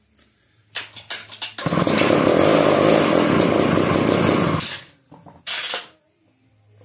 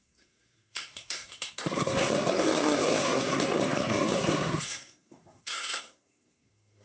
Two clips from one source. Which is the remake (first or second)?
second